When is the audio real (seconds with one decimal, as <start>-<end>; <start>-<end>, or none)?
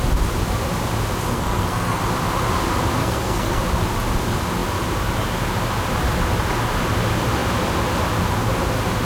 0.0-1.3; 2.0-3.0; 3.6-9.0